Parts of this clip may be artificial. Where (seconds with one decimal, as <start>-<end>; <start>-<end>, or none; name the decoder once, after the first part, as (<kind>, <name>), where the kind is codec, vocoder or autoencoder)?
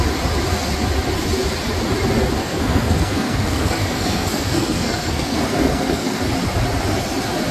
2.4-6.2 (codec, SNAC)